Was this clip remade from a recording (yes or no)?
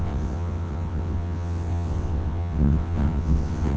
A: yes